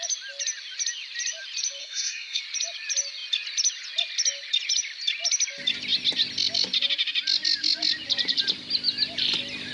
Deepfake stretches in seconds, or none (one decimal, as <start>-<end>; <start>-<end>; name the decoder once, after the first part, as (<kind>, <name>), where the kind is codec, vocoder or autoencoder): 1.8-2.4 (codec, SNAC)